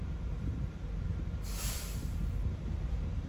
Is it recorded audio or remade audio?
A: remade